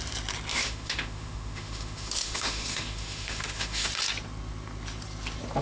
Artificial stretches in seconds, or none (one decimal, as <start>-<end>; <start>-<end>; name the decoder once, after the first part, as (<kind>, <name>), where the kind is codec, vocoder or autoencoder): 0.5-3.9 (autoencoder, DAC-VAE)